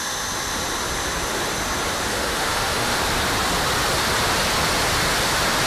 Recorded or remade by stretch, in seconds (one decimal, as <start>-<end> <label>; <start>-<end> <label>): 0.0-2.1 recorded; 2.1-3.0 remade; 3.0-5.7 recorded